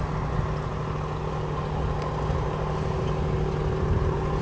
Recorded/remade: recorded